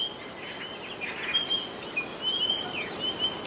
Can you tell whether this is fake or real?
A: real